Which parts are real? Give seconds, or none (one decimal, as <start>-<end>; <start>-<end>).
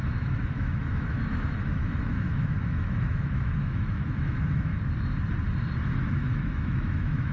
4.7-6.0